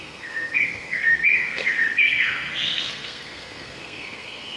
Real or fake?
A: fake